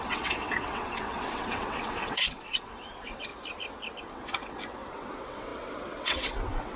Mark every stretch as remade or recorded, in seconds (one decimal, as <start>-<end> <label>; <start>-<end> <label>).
0.0-3.3 remade; 3.3-4.0 recorded; 4.0-6.8 remade